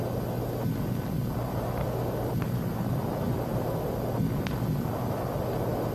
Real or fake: real